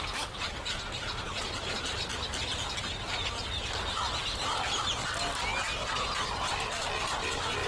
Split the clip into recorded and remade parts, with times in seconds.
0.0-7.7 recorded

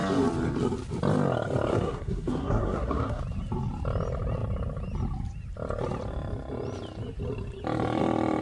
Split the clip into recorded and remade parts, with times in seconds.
0.0-1.7 recorded; 1.7-3.2 remade; 3.2-8.4 recorded